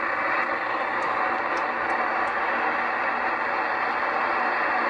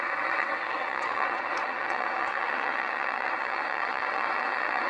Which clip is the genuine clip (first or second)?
first